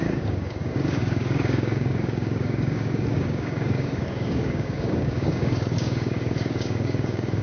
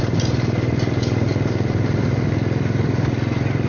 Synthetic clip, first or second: first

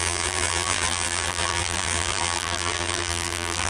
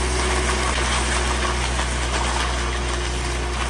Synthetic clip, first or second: first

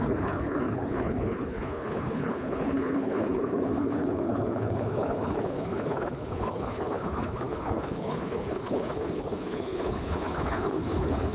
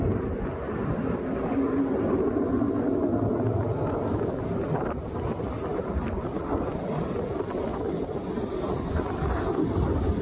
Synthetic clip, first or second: first